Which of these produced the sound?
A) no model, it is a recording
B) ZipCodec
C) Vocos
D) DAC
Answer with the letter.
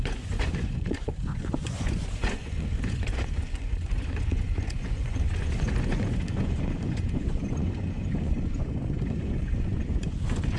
C